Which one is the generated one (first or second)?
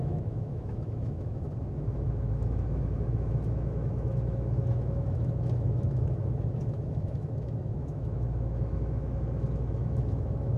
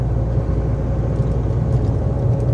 first